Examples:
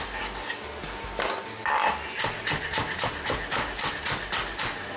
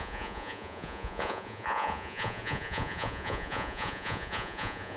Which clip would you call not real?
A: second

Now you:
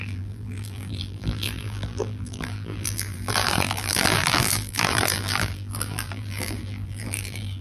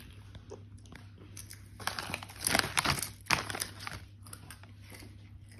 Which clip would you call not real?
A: first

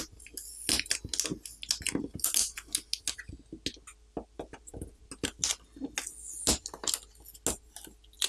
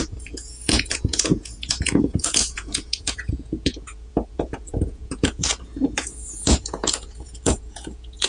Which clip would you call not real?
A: second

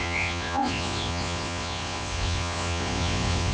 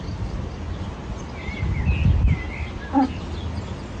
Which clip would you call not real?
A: first